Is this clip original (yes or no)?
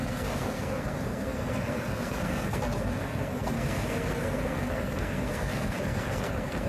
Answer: no